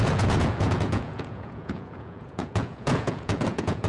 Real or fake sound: fake